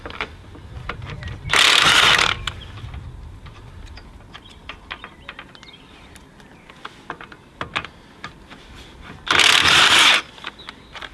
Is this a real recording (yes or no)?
yes